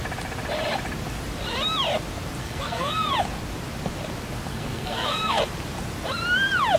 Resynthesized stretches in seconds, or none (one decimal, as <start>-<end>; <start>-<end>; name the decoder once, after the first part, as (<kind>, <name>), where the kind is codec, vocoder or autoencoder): 2.4-3.1 (codec, SNAC); 4.5-5.4